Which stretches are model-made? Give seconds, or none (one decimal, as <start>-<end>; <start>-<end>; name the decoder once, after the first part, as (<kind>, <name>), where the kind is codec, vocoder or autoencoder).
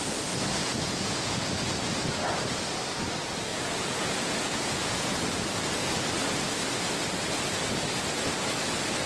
0.6-1.5 (vocoder, Vocos); 3.5-5.1